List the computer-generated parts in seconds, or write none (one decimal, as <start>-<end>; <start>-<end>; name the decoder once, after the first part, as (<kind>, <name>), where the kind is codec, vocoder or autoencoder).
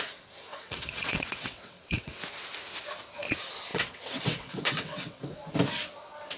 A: 0.5-2.2 (vocoder, WaveNeXt); 3.7-5.2